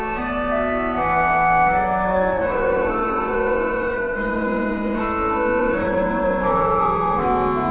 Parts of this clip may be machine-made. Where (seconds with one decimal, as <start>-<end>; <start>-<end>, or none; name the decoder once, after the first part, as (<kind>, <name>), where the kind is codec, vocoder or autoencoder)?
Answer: 2.1-5.0 (vocoder, Vocos); 5.6-7.2